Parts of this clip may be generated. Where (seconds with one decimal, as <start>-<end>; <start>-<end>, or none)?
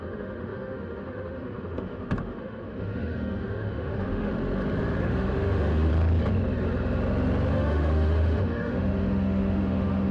0.0-4.3; 5.0-5.9; 7.5-10.1